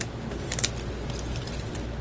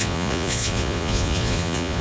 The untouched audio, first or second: first